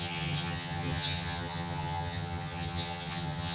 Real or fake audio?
fake